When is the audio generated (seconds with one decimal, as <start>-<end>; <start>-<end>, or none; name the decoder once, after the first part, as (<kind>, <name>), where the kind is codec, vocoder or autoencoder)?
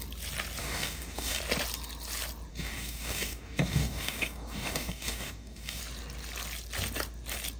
0.6-1.4 (codec, DAC); 2.5-5.8